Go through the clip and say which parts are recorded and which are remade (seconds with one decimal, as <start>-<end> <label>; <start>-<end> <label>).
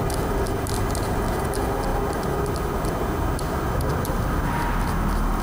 0.0-5.4 recorded